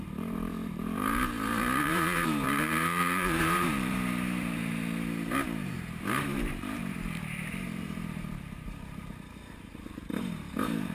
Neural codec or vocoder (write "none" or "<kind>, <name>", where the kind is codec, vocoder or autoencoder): vocoder, BigVGAN v2